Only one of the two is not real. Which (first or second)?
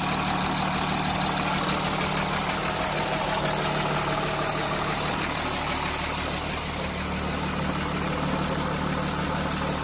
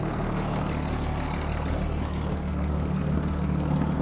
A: second